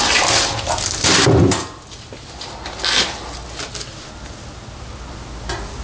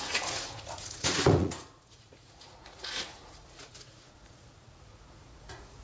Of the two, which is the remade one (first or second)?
second